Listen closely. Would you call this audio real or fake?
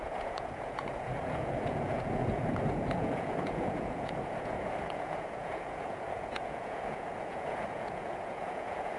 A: fake